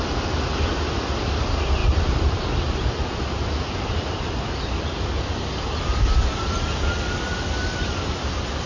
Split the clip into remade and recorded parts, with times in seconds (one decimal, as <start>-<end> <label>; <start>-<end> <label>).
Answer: 0.0-8.7 recorded